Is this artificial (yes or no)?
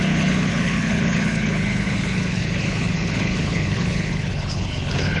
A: yes